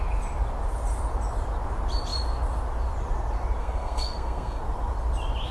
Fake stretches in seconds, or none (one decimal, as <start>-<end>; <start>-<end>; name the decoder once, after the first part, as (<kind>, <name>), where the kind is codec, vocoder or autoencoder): 3.6-4.6 (codec, SNAC)